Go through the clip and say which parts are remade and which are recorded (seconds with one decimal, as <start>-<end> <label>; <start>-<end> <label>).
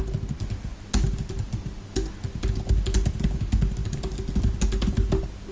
0.0-3.8 recorded; 3.8-4.5 remade; 4.5-5.5 recorded